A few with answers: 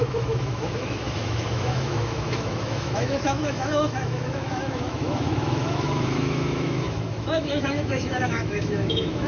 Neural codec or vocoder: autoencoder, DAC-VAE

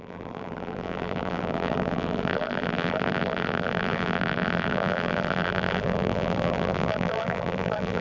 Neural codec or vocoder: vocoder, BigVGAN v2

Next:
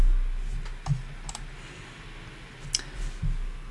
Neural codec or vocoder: none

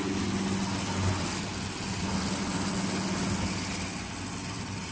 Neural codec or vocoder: none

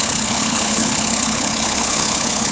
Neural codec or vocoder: codec, HILCodec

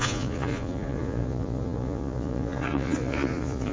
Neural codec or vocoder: vocoder, Vocos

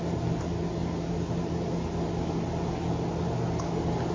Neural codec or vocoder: none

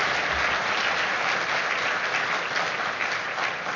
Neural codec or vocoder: none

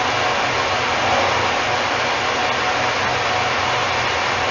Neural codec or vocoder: none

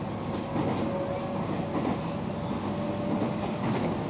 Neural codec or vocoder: none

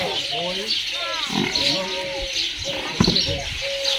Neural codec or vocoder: none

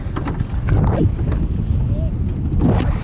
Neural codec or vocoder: none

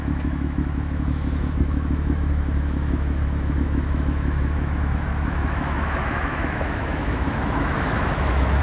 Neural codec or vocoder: autoencoder, DAC-VAE